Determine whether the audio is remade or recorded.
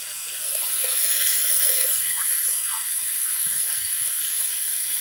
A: remade